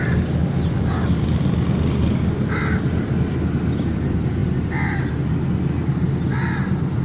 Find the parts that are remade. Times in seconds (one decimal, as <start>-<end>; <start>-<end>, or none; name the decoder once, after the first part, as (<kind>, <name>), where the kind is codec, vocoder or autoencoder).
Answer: none